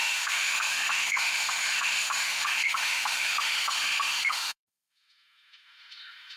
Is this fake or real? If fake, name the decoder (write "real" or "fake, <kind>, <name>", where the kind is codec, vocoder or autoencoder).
fake, autoencoder, DAC-VAE